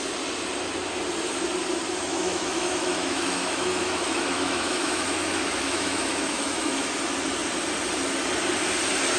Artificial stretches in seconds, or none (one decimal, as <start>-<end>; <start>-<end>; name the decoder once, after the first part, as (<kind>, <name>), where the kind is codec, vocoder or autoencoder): 2.1-6.9 (autoencoder, DAC-VAE)